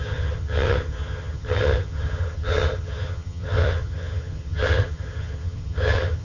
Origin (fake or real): fake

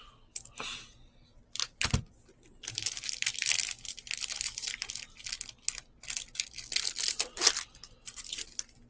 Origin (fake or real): real